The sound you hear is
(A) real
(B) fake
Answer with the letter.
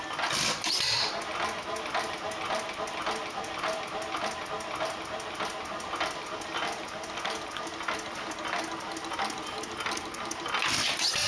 A